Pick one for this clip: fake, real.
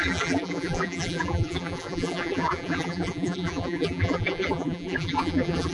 fake